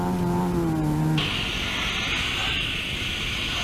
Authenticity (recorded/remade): recorded